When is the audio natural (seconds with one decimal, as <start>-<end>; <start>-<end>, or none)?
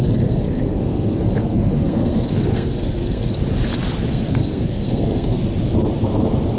3.3-4.1; 5.4-6.6